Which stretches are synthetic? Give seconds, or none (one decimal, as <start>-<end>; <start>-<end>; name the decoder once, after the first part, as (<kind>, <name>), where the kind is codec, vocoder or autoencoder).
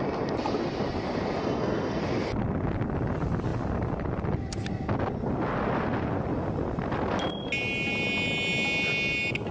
1.4-2.0 (codec, SNAC)